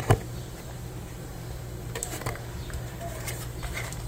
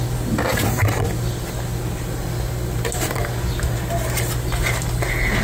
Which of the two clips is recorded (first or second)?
second